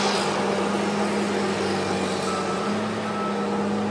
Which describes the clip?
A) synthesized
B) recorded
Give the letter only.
B